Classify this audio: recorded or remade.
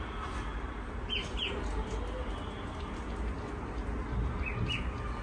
recorded